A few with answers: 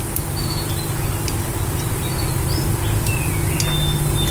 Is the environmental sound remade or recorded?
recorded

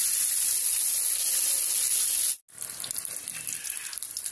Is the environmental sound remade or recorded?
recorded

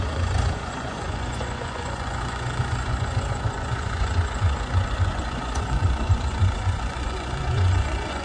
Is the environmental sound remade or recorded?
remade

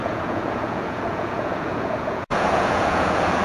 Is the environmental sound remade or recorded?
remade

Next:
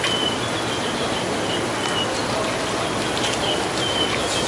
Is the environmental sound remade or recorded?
recorded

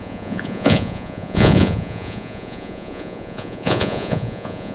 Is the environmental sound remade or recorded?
remade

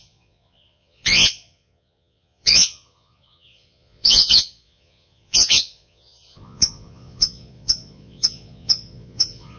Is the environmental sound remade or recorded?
remade